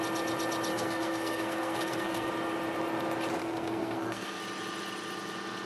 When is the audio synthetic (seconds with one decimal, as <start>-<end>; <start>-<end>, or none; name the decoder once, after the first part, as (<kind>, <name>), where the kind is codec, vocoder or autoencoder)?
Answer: 0.7-2.3 (codec, SNAC); 3.4-4.4